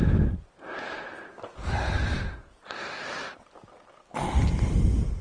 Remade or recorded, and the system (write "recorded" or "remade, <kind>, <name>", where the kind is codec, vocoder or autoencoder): recorded